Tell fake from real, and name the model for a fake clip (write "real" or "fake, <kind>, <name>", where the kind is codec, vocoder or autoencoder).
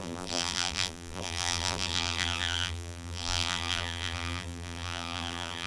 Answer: fake, vocoder, BigVGAN v2